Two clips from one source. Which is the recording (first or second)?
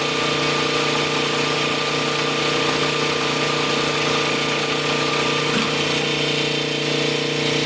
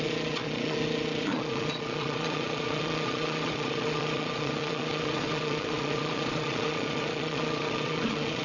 first